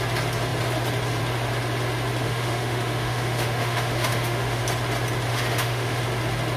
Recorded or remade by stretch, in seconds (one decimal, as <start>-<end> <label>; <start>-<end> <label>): 0.0-2.2 recorded; 2.2-4.6 remade; 4.6-5.3 recorded; 5.3-6.0 remade; 6.0-6.6 recorded